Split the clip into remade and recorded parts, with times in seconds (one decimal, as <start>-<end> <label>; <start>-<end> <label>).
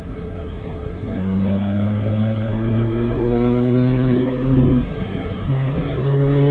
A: 0.0-6.5 remade